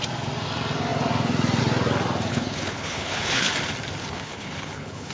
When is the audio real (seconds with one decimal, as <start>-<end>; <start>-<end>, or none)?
0.0-2.3; 3.5-4.0

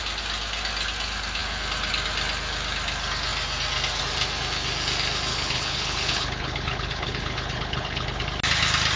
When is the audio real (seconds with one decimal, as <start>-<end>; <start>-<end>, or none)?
0.0-5.3; 8.2-9.0

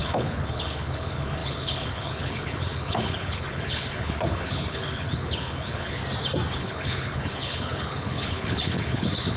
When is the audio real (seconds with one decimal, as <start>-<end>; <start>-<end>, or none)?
6.0-6.5

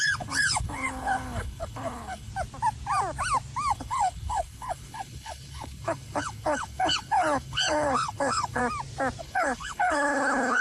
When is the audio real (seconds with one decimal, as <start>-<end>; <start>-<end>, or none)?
2.3-3.7; 8.6-9.2

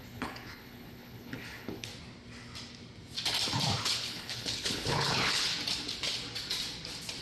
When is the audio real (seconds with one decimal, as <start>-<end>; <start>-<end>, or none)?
1.9-3.8; 5.5-7.2

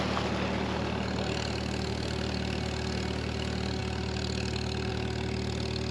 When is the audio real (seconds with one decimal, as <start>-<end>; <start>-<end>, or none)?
0.0-5.9

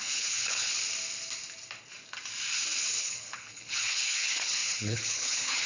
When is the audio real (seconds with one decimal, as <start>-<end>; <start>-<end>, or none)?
0.7-3.0

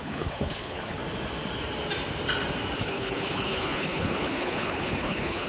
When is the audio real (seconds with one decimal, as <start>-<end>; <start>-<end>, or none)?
1.0-2.8